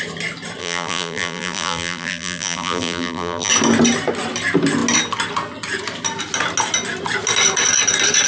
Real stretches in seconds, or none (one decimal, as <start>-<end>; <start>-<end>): 0.0-0.6; 3.5-8.3